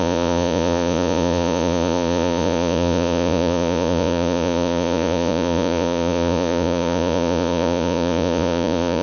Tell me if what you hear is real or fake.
fake